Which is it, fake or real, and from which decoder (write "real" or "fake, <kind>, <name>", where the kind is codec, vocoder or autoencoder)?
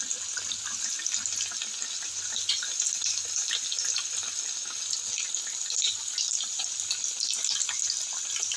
real